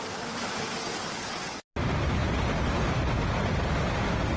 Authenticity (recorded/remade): recorded